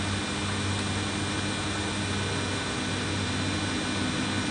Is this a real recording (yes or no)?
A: yes